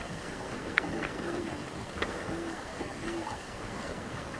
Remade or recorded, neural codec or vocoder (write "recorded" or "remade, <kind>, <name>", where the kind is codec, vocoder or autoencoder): remade, codec, SNAC